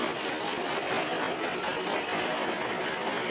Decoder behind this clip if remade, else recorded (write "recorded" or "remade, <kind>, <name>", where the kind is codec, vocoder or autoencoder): recorded